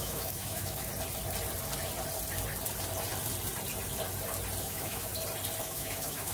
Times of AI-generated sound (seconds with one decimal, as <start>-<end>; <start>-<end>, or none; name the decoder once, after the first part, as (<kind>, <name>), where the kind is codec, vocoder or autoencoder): 0.0-0.9 (autoencoder, DAC-VAE); 4.6-5.1; 5.6-6.3